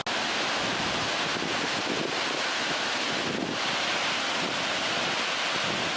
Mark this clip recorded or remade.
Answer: recorded